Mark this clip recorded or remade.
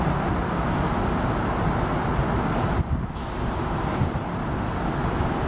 recorded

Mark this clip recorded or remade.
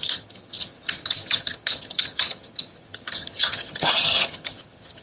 remade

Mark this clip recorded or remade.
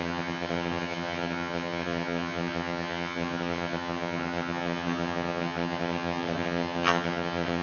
remade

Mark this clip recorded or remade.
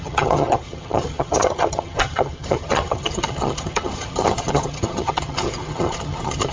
remade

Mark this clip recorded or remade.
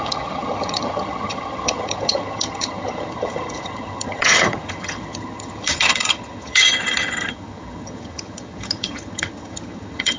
remade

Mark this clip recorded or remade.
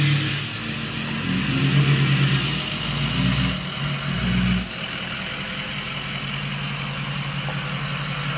recorded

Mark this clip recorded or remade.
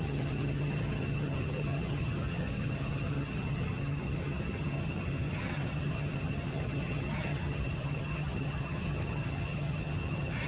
remade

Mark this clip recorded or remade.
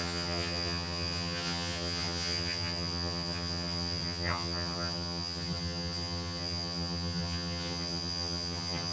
remade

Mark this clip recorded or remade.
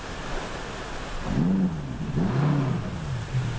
recorded